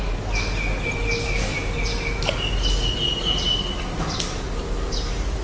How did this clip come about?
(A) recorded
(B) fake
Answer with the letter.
A